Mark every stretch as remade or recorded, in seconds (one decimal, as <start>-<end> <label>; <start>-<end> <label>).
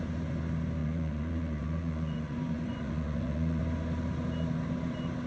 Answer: 0.0-0.8 recorded; 0.8-3.6 remade; 3.6-5.3 recorded